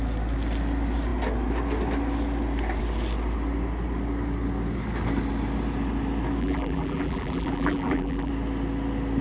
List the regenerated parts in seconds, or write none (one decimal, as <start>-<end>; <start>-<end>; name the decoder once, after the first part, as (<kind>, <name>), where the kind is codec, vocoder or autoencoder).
6.4-8.3 (vocoder, BigVGAN v2)